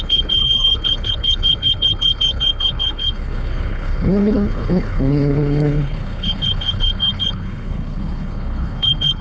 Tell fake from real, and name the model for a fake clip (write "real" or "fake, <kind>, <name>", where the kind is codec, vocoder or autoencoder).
fake, codec, HILCodec